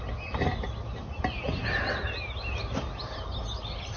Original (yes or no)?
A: yes